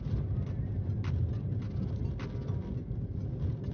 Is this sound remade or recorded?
recorded